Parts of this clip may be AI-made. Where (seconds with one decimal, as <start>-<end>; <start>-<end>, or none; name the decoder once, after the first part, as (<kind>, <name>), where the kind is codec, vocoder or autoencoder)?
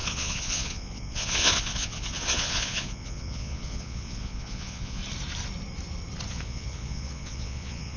0.0-5.0 (vocoder, Vocos); 6.3-8.0